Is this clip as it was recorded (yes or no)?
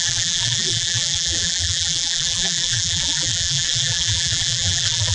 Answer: no